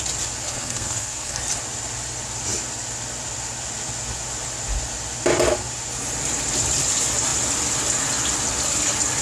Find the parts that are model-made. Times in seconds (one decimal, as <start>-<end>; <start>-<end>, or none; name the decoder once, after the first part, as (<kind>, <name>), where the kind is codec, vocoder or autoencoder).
0.4-1.4 (codec, SNAC)